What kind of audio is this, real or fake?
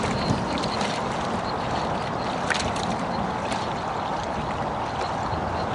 real